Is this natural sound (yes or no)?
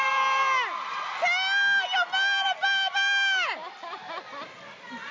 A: yes